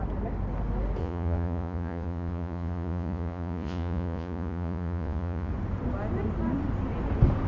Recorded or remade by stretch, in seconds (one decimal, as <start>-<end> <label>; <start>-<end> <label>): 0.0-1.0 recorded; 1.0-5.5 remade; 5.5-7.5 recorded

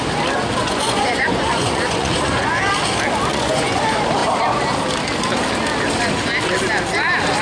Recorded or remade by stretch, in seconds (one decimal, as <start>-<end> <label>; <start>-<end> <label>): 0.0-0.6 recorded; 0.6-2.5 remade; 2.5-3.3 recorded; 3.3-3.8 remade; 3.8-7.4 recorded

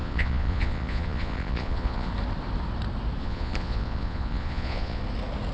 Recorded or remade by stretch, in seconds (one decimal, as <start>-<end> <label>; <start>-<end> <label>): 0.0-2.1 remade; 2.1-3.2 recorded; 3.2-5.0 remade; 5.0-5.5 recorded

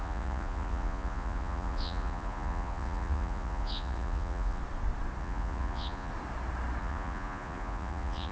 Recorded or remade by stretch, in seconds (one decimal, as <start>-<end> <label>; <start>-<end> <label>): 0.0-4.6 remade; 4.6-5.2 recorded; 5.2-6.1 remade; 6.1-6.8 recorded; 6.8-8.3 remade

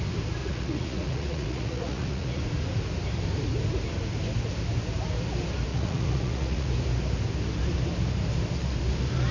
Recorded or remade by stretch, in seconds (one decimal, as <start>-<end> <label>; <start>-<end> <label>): 0.0-0.4 recorded; 0.4-2.4 remade; 2.4-5.7 recorded; 5.7-6.7 remade; 6.7-9.3 recorded